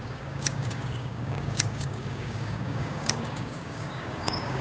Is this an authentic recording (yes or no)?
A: no